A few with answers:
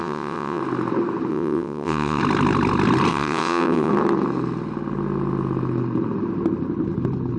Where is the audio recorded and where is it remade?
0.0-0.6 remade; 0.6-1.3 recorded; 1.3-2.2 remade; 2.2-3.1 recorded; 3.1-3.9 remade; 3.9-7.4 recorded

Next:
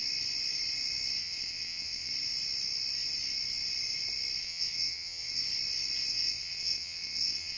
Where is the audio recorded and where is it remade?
0.0-1.2 recorded; 1.2-2.1 remade; 2.1-4.4 recorded; 4.4-5.4 remade; 5.4-6.1 recorded; 6.1-7.6 remade